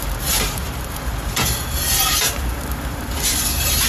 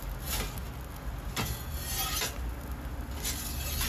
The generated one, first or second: first